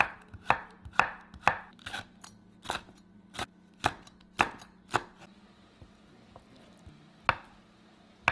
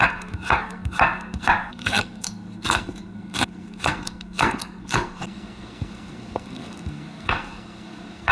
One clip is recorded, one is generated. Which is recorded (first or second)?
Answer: first